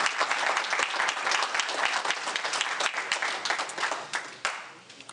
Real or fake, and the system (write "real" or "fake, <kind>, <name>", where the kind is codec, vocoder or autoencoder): real